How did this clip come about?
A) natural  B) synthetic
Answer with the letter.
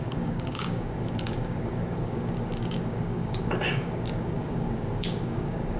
B